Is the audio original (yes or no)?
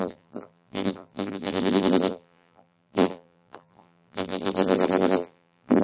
no